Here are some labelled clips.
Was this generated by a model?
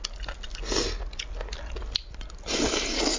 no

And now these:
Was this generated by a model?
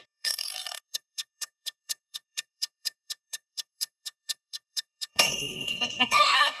yes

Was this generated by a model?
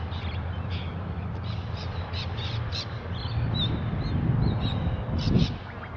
no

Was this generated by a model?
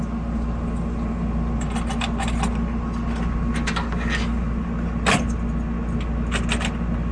no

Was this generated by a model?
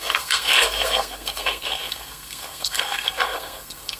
yes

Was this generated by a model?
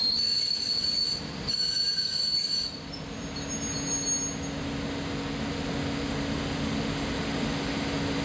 no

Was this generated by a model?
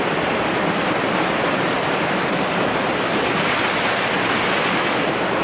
no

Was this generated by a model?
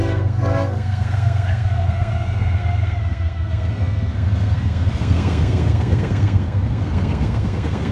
yes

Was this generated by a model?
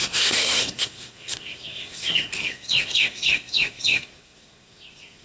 yes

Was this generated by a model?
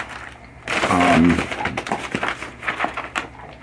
no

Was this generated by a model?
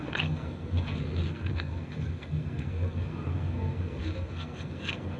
yes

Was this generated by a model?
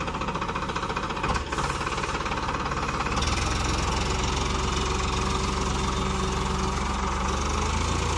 no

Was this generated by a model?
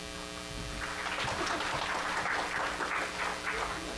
no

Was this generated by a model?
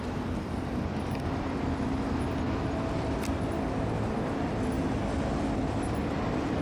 no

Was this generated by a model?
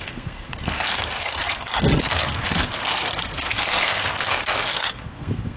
yes